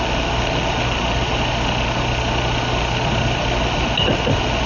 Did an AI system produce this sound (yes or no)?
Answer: no